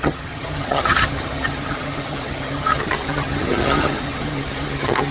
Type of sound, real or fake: fake